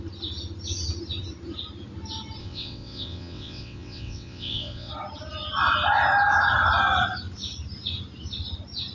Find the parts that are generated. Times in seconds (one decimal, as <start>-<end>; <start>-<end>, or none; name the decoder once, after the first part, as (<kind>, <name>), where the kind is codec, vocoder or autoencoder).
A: 2.4-4.9 (vocoder, WaveNeXt)